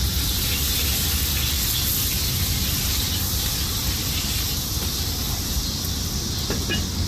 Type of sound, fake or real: real